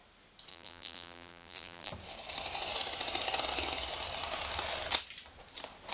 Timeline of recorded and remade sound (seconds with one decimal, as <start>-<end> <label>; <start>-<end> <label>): 0.0-0.5 recorded; 0.5-1.9 remade; 1.9-5.9 recorded